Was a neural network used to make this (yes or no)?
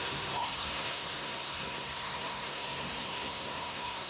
yes